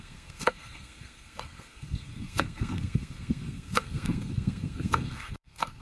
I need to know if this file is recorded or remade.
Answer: remade